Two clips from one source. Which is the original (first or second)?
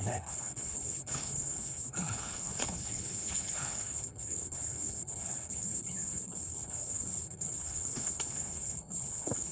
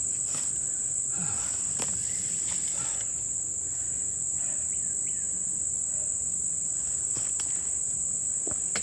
second